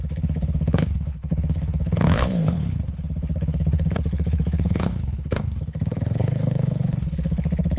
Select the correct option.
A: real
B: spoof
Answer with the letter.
B